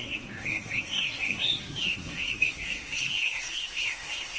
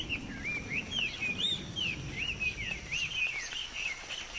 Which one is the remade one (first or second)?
first